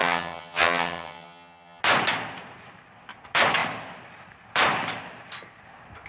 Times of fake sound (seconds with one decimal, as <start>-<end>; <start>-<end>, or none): 0.0-1.8